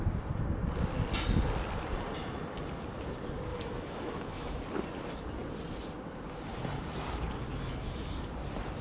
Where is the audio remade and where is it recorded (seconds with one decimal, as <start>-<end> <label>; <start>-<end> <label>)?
0.0-3.5 recorded; 3.5-4.6 remade; 4.6-8.8 recorded